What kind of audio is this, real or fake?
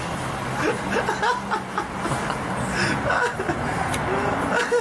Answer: real